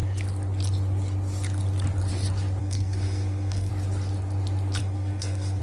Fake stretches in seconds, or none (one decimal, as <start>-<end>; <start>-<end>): 2.6-3.7; 4.8-5.6